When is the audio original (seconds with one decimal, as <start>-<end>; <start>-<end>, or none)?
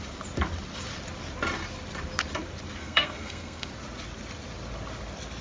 0.0-2.8; 3.7-5.4